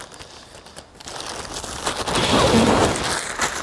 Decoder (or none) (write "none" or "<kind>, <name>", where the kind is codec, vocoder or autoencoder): none